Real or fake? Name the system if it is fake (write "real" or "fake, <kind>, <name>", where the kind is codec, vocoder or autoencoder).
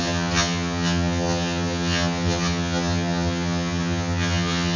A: fake, vocoder, HiFi-GAN